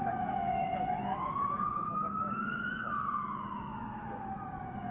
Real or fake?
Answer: fake